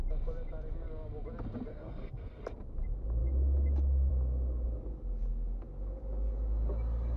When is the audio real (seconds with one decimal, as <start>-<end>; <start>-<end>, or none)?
0.0-1.7; 2.4-7.2